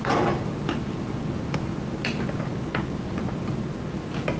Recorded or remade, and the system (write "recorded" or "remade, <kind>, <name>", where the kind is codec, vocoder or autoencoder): recorded